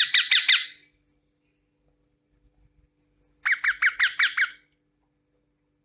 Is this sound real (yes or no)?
yes